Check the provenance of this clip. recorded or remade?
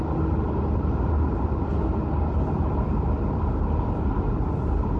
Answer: recorded